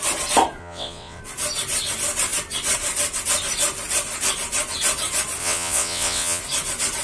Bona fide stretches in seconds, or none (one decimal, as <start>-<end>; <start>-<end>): 0.0-0.6; 1.2-5.4; 6.4-7.0

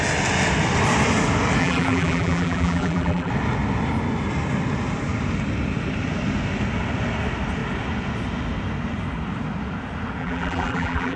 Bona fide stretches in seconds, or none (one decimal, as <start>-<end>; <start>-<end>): 0.0-1.6; 3.3-10.2

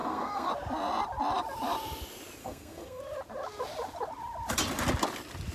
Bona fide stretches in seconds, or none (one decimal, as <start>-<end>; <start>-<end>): 0.5-2.4; 3.0-5.5

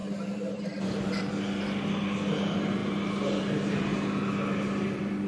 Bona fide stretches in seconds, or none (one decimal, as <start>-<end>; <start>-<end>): 1.3-5.3

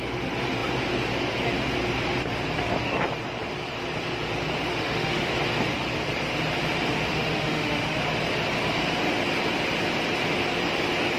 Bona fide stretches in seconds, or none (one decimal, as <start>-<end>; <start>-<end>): 0.0-4.7; 5.3-7.1; 8.0-11.2

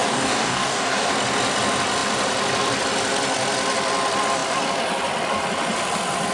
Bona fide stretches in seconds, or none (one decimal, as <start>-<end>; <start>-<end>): 1.1-6.3

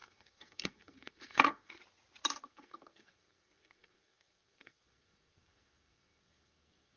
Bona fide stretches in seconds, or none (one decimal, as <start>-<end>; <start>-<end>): 1.8-2.4